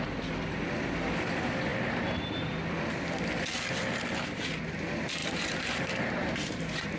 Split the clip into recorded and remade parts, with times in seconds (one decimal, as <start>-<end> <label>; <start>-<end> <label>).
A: 0.0-5.2 recorded; 5.2-5.8 remade; 5.8-6.2 recorded; 6.2-7.0 remade